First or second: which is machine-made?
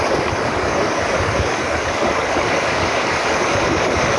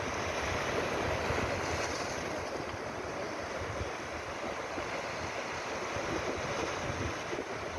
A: first